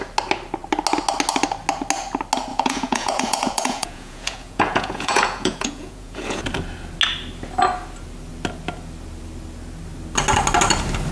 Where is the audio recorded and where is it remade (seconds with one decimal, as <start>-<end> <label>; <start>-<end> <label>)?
0.0-2.5 recorded; 2.5-6.4 remade; 6.4-11.1 recorded